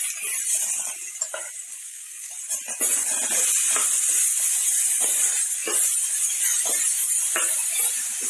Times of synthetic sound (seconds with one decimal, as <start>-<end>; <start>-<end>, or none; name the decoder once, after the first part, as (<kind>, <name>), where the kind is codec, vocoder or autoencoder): 1.8-2.3 (codec, SNAC)